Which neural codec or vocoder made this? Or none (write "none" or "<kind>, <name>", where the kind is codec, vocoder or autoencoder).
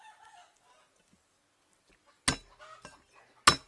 none